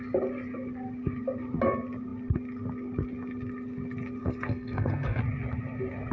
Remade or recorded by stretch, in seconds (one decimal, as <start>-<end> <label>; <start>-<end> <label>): 0.0-4.2 recorded; 4.2-5.2 remade; 5.2-6.1 recorded